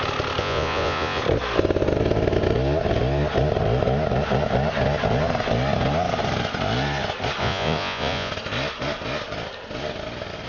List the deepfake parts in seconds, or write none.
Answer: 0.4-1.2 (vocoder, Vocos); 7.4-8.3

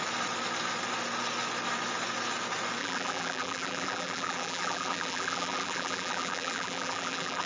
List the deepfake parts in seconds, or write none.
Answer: 2.8-7.5 (vocoder, BigVGAN v2)